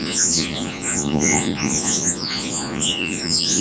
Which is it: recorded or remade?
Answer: remade